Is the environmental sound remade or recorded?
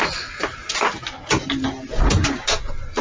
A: recorded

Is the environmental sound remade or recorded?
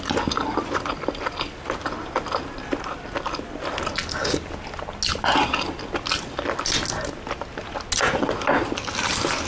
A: recorded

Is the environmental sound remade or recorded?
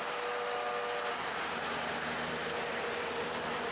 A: recorded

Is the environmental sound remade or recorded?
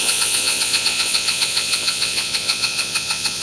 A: remade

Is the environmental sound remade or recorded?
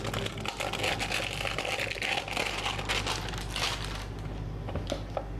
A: recorded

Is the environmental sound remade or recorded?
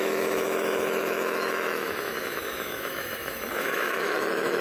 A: remade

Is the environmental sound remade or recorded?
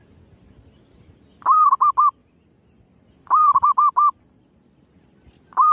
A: recorded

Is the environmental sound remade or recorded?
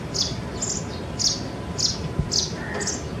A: recorded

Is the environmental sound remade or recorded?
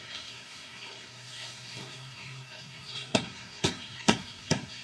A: remade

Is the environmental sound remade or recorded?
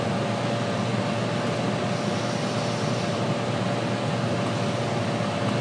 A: recorded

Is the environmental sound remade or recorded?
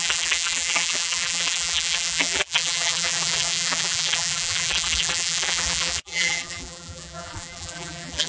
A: remade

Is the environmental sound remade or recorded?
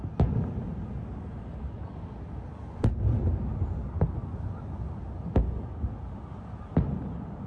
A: recorded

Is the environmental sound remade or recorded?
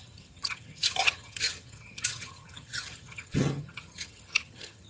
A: remade